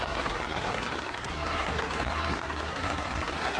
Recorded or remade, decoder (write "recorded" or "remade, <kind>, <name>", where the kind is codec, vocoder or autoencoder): remade, codec, SNAC